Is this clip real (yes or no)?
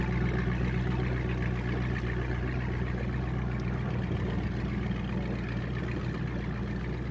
yes